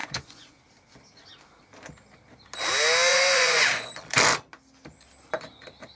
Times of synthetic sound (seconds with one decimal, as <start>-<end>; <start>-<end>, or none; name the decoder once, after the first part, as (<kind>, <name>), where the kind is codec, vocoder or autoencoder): 0.0-0.6 (vocoder, Vocos); 3.1-3.9